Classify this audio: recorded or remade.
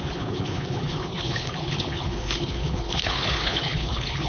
remade